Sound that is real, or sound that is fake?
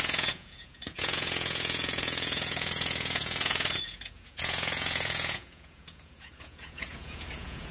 fake